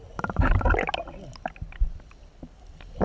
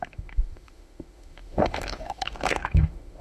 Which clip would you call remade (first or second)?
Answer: second